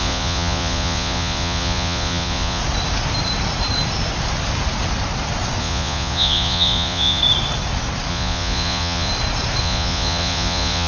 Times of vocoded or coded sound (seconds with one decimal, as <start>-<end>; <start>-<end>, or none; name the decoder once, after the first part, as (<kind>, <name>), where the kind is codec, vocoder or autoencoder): 0.0-2.6 (vocoder, Vocos); 5.6-7.2; 8.1-9.1; 9.6-10.9